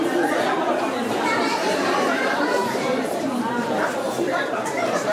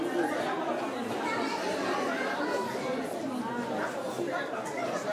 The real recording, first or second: second